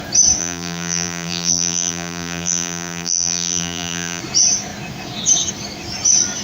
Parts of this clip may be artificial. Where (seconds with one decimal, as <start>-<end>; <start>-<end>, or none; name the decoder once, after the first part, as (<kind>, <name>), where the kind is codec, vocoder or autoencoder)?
0.4-4.2 (vocoder, BigVGAN v2)